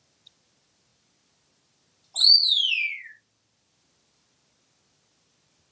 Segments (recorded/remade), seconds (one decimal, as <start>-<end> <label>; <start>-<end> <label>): 0.0-5.7 recorded